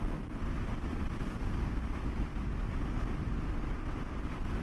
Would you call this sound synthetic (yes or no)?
no